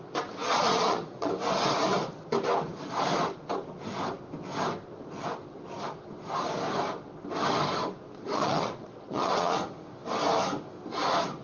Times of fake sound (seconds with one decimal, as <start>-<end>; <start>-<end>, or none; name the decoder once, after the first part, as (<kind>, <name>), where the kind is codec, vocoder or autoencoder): 0.4-1.3 (vocoder, Vocos); 8.1-9.6